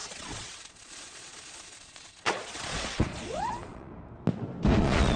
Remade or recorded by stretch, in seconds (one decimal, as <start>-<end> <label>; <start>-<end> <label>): 0.0-3.9 remade; 3.9-4.8 recorded; 4.8-5.2 remade